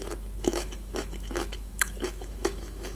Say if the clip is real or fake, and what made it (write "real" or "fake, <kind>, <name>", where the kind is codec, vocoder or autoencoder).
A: fake, autoencoder, DAC-VAE